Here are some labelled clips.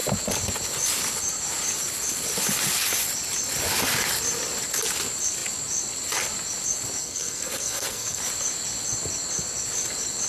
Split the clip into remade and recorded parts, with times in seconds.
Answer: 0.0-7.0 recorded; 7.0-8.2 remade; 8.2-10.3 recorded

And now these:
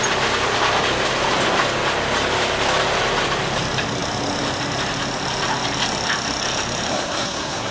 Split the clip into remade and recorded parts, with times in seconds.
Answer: 0.0-6.9 recorded; 6.9-7.7 remade

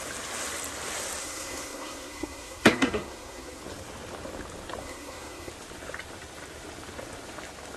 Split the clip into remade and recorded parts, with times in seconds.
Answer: 0.0-1.2 recorded; 1.2-3.6 remade; 3.6-4.8 recorded; 4.8-5.5 remade; 5.5-7.8 recorded

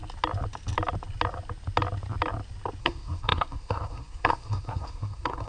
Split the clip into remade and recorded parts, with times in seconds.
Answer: 0.0-2.8 recorded; 2.8-5.5 remade

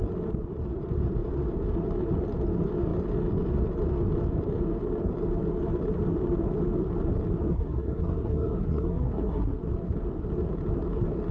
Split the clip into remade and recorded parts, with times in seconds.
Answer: 0.0-7.5 recorded; 7.5-9.6 remade; 9.6-11.3 recorded

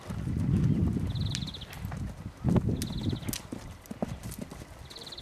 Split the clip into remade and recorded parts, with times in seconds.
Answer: 0.0-5.2 recorded

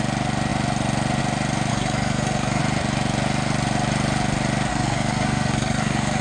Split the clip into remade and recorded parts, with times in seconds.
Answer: 0.0-1.7 recorded; 1.7-2.6 remade; 2.6-4.7 recorded; 4.7-6.2 remade